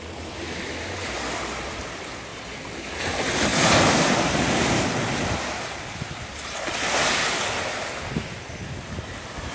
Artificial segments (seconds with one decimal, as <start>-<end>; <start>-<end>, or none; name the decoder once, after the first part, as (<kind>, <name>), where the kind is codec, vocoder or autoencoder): none